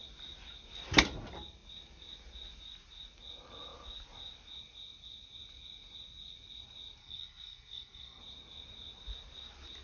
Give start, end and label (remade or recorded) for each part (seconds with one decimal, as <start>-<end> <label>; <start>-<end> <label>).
0.0-7.0 recorded; 7.0-8.2 remade; 8.2-9.8 recorded